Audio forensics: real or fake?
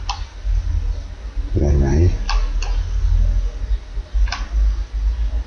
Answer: real